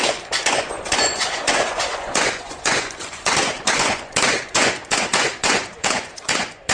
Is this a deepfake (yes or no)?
yes